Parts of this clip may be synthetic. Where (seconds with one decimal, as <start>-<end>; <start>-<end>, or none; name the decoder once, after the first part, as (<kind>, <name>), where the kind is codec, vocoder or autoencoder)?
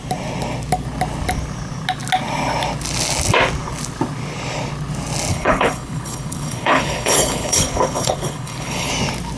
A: 5.3-8.9 (codec, HILCodec)